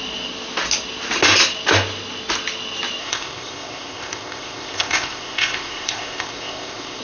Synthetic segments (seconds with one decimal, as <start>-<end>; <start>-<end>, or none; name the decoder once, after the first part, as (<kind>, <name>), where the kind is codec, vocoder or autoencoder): 3.0-7.0 (codec, ZipCodec)